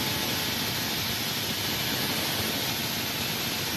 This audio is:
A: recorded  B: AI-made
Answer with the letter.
A